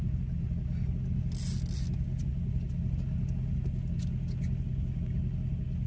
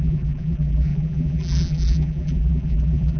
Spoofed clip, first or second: second